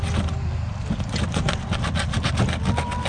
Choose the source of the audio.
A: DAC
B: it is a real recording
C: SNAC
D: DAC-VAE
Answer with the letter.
B